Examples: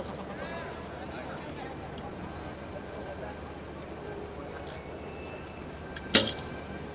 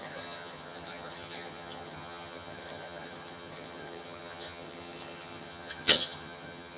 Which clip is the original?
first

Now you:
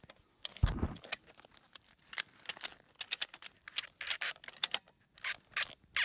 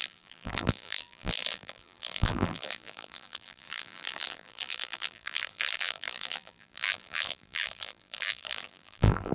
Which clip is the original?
first